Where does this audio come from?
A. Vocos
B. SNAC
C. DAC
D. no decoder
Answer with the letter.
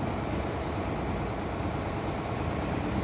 D